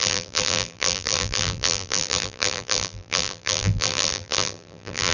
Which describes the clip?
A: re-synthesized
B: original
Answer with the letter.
A